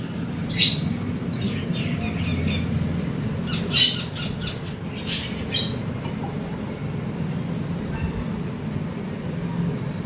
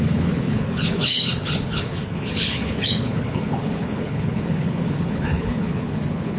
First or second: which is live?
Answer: first